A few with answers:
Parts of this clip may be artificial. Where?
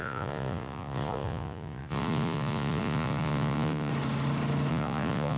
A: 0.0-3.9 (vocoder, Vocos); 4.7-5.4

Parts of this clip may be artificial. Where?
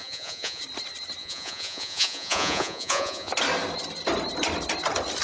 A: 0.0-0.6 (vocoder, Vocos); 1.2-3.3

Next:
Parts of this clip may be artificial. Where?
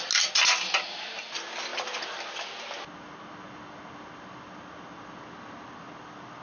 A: none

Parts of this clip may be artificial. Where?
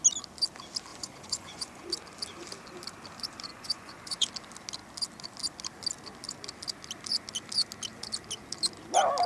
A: 0.9-1.8 (vocoder, Vocos); 3.5-4.3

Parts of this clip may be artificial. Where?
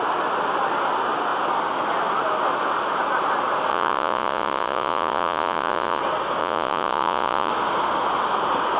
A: 3.7-6.0 (vocoder, Vocos); 6.4-7.5